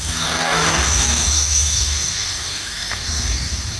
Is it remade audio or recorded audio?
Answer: remade